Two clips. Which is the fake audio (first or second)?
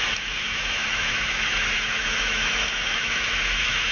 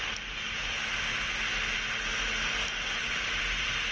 first